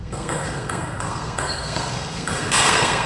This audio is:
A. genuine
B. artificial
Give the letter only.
B